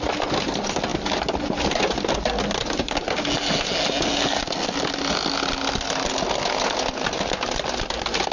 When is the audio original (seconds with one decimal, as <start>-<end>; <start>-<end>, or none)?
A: 0.0-8.3